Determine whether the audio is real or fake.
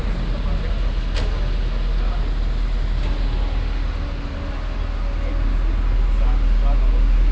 real